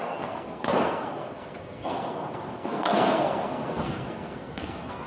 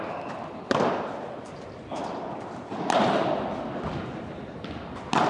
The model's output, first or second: first